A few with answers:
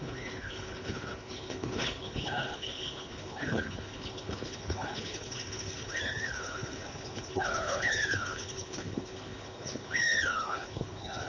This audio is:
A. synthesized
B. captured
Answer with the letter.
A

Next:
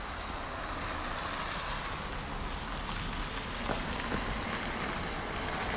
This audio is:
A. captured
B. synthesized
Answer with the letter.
A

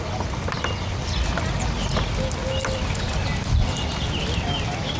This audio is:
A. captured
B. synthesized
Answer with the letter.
A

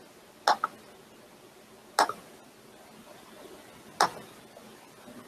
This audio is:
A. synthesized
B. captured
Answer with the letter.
B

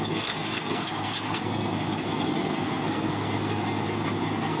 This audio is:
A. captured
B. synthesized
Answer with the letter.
B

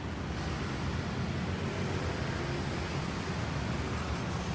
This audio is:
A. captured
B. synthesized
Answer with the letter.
A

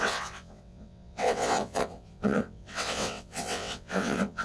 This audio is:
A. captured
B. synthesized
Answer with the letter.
B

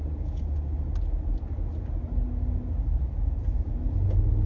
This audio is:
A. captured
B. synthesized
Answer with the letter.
A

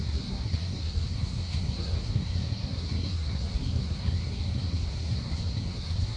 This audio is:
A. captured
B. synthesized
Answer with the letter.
B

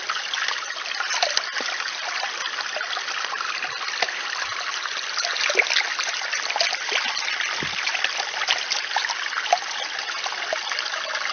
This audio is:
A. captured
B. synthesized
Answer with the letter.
A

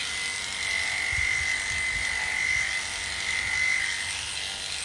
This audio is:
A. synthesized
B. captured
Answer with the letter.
B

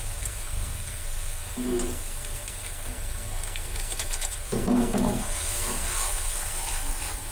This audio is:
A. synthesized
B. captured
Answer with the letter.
A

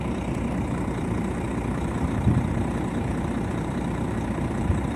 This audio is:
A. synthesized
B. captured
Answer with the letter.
A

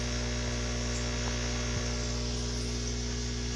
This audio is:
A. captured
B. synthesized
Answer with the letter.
A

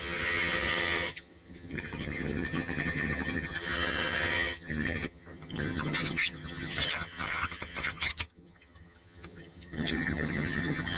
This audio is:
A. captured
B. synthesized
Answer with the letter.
B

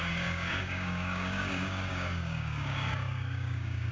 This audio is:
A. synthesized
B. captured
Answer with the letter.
A